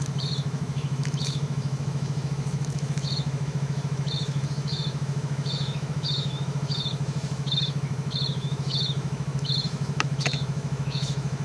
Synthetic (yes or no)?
yes